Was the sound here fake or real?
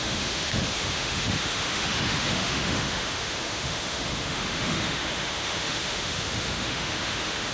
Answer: fake